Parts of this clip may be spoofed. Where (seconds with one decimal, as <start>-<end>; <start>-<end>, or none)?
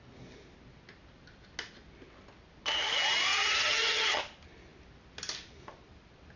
3.3-4.2